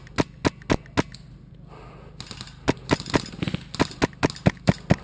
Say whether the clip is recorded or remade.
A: recorded